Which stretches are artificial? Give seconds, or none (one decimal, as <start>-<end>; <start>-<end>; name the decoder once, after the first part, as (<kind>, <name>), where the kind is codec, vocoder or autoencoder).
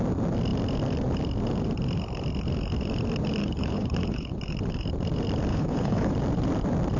3.4-4.4 (codec, HILCodec); 5.5-6.1